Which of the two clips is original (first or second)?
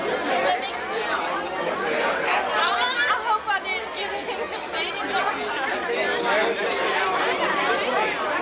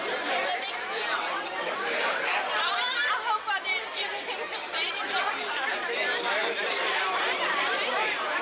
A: first